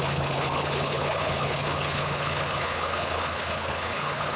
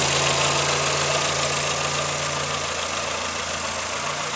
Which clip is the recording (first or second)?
second